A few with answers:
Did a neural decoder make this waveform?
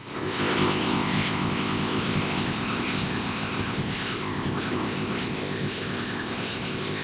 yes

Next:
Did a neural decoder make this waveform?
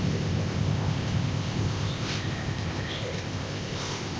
yes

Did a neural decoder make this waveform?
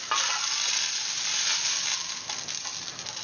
no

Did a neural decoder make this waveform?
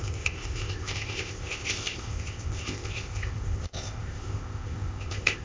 yes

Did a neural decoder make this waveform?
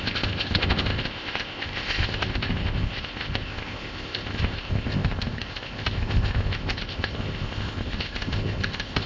yes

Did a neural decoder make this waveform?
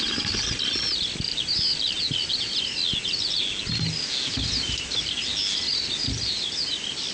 no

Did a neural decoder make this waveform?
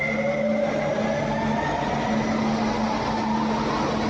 no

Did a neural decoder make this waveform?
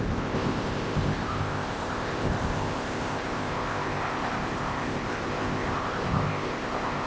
yes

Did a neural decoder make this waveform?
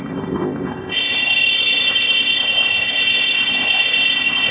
yes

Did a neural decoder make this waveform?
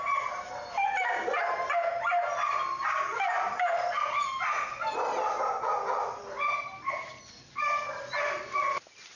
no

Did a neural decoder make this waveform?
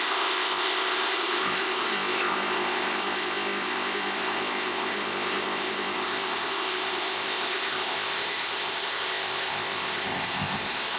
yes